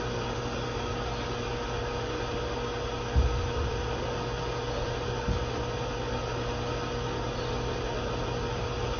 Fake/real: real